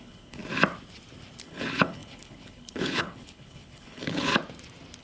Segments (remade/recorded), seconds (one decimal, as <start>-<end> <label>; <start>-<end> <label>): 0.0-0.4 remade; 0.4-1.4 recorded; 1.4-4.3 remade; 4.3-5.0 recorded

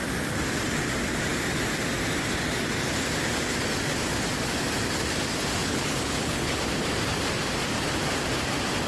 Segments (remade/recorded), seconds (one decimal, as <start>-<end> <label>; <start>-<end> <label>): 0.0-5.6 recorded; 5.6-6.6 remade; 6.6-8.9 recorded

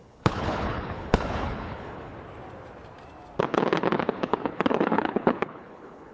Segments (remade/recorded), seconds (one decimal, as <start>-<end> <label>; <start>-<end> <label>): 0.0-2.1 remade; 2.1-3.4 recorded; 3.4-6.1 remade

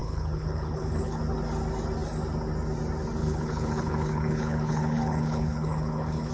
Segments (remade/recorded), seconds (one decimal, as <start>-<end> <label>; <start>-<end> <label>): 0.0-1.2 remade; 1.2-3.2 recorded; 3.2-6.3 remade

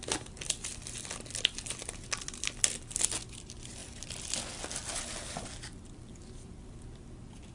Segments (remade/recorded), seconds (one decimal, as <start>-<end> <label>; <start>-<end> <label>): 0.0-7.5 recorded

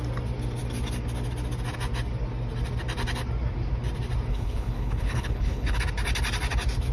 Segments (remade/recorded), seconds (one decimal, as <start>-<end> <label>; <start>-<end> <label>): 0.0-4.3 recorded; 4.3-5.8 remade; 5.8-6.9 recorded

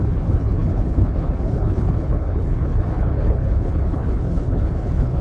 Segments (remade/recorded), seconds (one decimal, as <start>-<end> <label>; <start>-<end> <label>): 0.0-5.2 remade

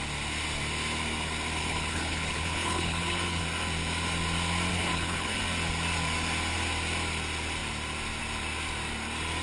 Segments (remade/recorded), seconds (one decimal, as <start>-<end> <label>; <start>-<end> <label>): 0.0-1.6 recorded; 1.6-3.4 remade; 3.4-4.7 recorded; 4.7-5.4 remade; 5.4-9.4 recorded